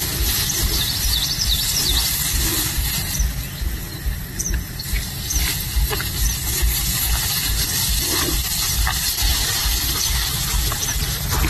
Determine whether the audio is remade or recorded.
recorded